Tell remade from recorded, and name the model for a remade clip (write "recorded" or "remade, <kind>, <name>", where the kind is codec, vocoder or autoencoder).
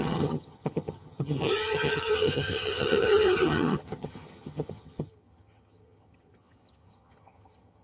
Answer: remade, vocoder, HiFi-GAN